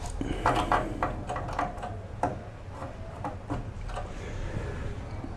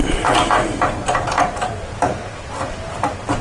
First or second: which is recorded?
first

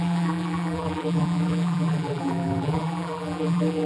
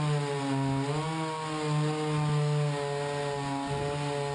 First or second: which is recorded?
second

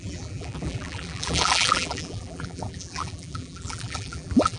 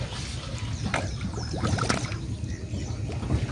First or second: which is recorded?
second